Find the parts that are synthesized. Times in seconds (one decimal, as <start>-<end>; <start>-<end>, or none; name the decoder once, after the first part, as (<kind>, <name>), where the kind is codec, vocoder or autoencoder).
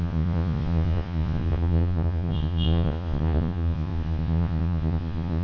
0.0-5.4 (vocoder, Vocos)